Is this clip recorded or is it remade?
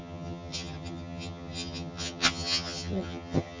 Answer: remade